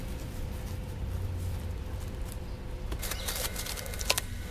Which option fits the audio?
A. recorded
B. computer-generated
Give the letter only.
B